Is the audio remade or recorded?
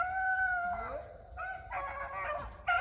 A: recorded